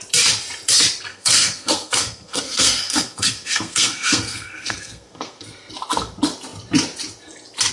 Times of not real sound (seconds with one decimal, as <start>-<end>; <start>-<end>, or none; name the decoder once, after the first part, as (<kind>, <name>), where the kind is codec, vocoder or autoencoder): 1.1-5.7 (codec, SNAC)

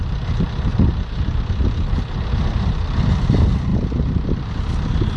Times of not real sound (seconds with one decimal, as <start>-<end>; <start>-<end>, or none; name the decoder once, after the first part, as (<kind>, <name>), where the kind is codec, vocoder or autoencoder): none